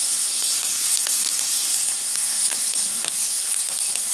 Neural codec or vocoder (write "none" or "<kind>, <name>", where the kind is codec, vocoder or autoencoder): codec, SNAC